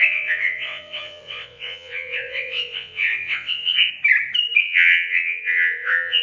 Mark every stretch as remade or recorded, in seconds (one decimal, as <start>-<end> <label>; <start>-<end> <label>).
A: 0.0-3.9 remade; 3.9-4.6 recorded; 4.6-6.2 remade